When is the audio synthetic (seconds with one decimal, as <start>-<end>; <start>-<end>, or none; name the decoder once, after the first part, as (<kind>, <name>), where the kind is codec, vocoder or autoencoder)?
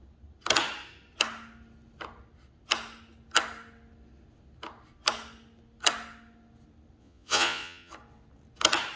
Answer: 7.0-7.9 (vocoder, Vocos)